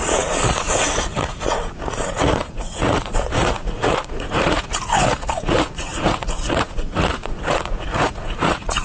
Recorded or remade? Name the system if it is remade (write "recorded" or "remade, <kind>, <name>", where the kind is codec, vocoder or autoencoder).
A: remade, vocoder, Vocos